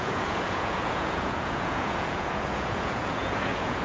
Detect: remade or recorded remade